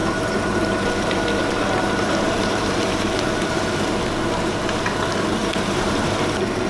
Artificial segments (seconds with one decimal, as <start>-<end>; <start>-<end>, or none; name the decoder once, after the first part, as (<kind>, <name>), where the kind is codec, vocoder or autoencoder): 0.0-4.0 (vocoder, BigVGAN v2); 5.4-6.7